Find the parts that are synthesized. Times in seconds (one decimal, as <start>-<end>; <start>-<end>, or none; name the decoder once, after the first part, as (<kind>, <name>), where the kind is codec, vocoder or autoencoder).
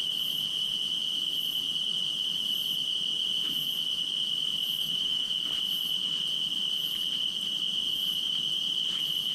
4.8-5.3 (autoencoder, DAC-VAE)